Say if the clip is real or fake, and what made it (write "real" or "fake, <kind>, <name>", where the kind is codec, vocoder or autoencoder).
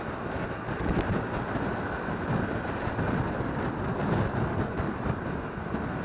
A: real